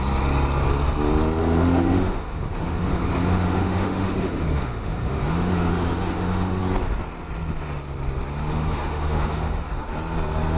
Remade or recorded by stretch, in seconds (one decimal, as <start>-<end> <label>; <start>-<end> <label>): 0.0-1.4 recorded; 1.4-6.6 remade; 6.6-8.5 recorded; 8.5-9.9 remade; 9.9-10.6 recorded